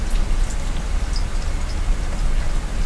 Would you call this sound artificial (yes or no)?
no